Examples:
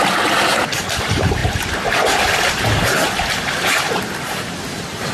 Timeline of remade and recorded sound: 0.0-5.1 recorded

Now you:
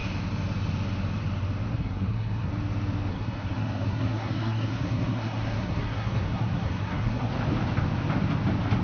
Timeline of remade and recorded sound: 0.0-1.7 recorded; 1.7-2.5 remade; 2.5-3.1 recorded; 3.1-7.3 remade; 7.3-8.8 recorded

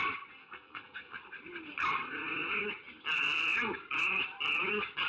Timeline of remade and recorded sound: 0.0-0.4 recorded; 0.4-1.1 remade; 1.1-5.1 recorded

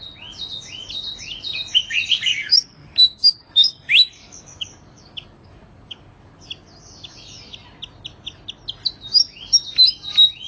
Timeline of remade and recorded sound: 0.0-2.3 recorded; 2.3-6.4 remade; 6.4-10.5 recorded

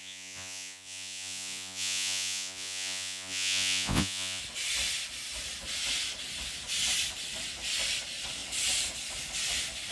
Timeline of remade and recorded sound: 0.0-4.4 remade; 4.4-9.9 recorded

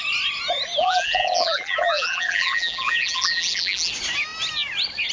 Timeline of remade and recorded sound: 0.0-0.8 recorded; 0.8-3.9 remade; 3.9-5.1 recorded

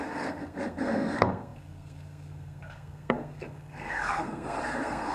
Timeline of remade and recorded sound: 0.0-5.1 remade

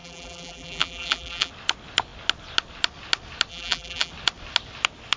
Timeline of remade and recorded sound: 0.0-1.5 remade; 1.5-3.5 recorded; 3.5-4.1 remade; 4.1-5.2 recorded